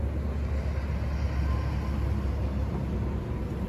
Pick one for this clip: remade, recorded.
recorded